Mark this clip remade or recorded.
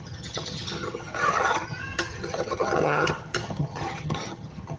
remade